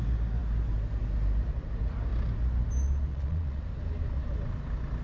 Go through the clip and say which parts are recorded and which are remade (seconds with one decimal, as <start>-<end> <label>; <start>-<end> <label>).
0.0-3.1 recorded; 3.1-3.6 remade; 3.6-5.0 recorded